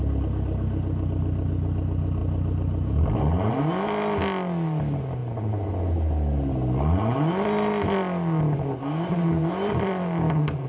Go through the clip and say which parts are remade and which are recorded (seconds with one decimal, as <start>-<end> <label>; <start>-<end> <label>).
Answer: 0.0-2.2 recorded; 2.2-3.5 remade; 3.5-10.7 recorded